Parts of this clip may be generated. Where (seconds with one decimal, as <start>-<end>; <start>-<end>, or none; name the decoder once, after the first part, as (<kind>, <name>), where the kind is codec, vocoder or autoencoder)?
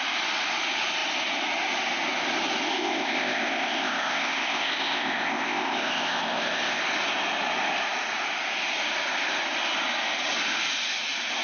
2.7-6.8 (codec, ZipCodec)